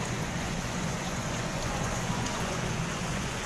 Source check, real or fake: fake